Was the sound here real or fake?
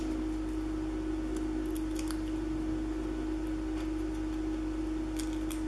real